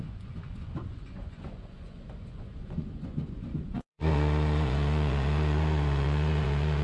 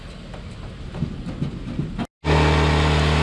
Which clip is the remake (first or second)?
first